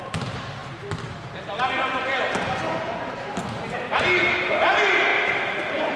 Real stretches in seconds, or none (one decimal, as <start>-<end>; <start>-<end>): 0.0-6.0